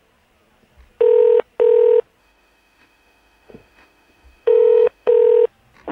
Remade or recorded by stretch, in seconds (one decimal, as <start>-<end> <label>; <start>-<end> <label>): 0.0-2.2 recorded; 2.2-5.1 remade; 5.1-5.9 recorded